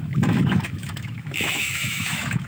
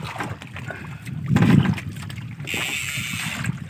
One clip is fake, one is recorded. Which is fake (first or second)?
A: first